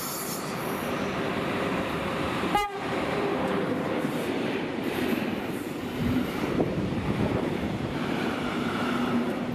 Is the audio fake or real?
fake